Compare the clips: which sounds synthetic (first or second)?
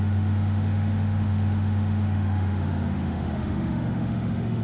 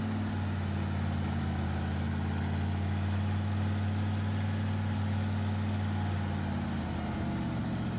first